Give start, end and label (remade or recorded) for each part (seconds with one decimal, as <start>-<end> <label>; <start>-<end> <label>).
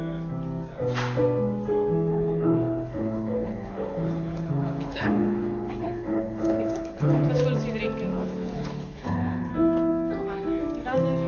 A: 0.0-2.1 recorded; 2.1-7.3 remade; 7.3-8.1 recorded; 8.1-9.5 remade; 9.5-11.3 recorded